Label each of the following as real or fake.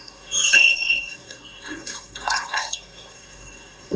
fake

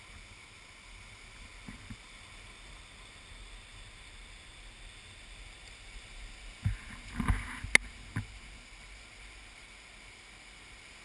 real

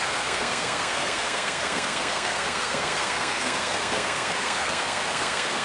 fake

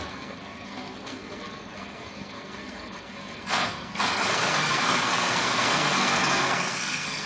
fake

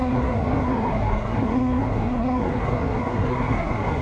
fake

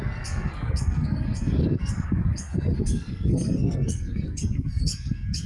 fake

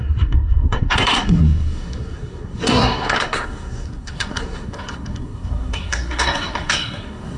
fake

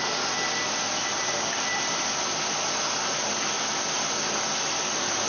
real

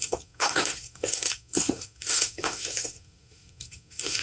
fake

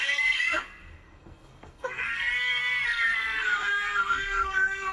fake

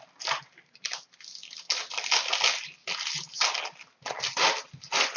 real